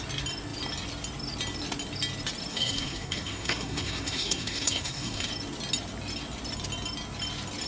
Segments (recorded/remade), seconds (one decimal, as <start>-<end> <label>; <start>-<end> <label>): 0.0-2.5 recorded; 2.5-5.3 remade; 5.3-7.7 recorded